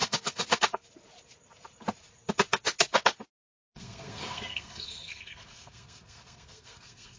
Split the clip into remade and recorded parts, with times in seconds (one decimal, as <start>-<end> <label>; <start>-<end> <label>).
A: 0.0-0.9 remade; 0.9-3.5 recorded; 3.5-7.2 remade